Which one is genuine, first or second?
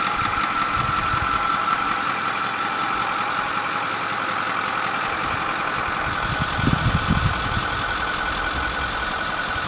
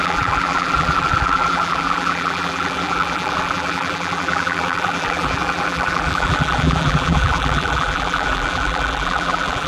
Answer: first